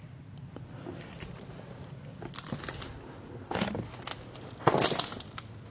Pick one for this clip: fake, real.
real